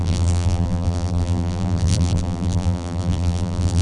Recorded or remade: remade